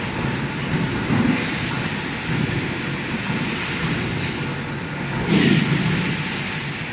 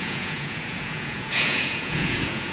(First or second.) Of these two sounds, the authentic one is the first